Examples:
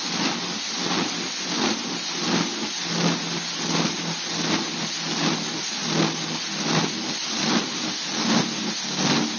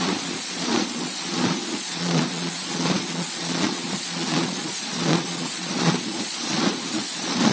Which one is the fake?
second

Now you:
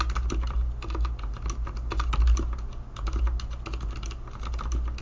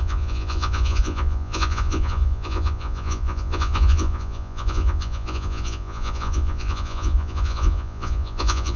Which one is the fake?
second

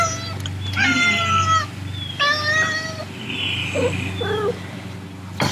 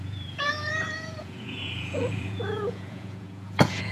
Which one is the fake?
second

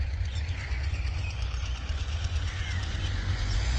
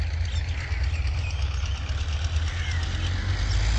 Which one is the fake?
first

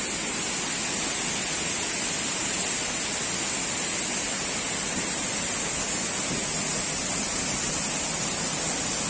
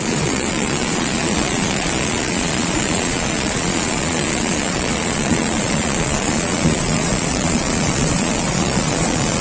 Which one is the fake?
second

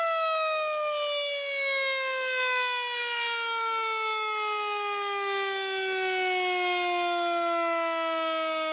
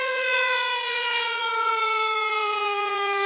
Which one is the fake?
second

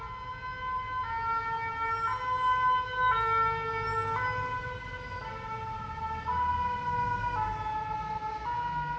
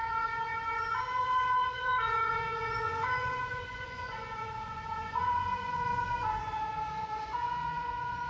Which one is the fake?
second